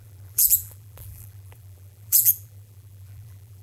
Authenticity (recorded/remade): remade